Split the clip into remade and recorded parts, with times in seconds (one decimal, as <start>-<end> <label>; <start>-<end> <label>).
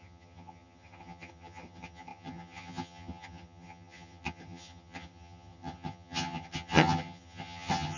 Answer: 0.0-8.0 remade